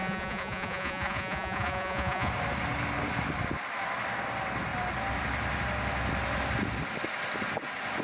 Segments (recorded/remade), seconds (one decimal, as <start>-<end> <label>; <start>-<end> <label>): 0.0-2.3 remade; 2.3-8.0 recorded